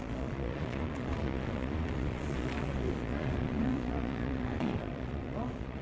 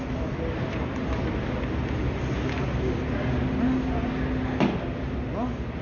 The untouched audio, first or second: second